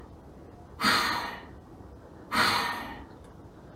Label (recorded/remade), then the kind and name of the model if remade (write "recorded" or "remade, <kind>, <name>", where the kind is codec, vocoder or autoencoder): recorded